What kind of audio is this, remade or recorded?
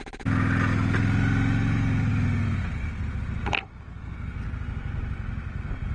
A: recorded